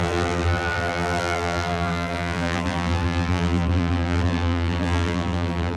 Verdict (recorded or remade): remade